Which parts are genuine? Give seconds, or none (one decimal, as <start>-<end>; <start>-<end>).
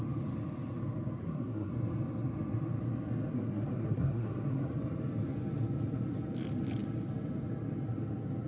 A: 0.0-1.2; 1.7-3.3; 4.7-8.5